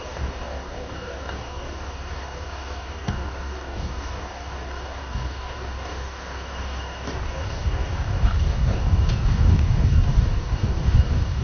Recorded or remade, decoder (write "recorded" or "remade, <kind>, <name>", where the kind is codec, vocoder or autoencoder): remade, codec, DAC